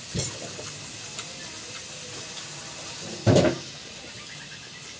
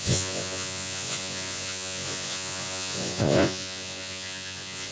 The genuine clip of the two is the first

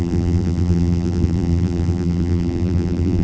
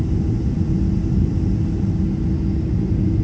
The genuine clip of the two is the second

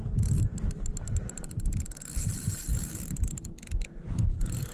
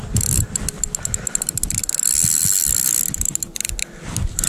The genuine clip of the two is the second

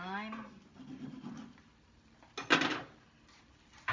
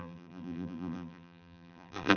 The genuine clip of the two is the first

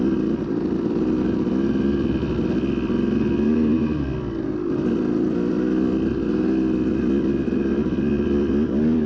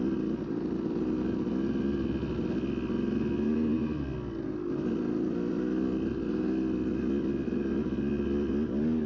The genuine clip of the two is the second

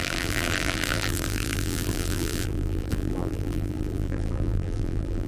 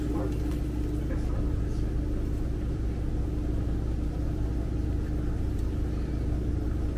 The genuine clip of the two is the second